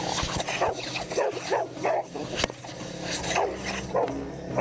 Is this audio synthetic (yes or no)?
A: no